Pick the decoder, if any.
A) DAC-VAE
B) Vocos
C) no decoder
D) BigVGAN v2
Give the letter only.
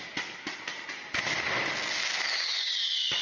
C